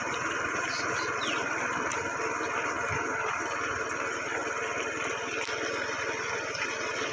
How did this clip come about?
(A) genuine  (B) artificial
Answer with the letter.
A